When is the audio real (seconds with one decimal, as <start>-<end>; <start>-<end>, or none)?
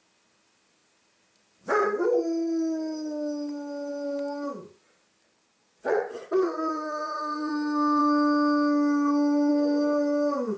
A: 0.0-5.6; 7.5-10.6